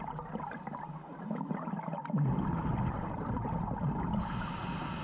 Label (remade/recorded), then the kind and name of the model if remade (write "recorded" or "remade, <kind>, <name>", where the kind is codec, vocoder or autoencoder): recorded